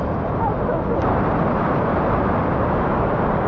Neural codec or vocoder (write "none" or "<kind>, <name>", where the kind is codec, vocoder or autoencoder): none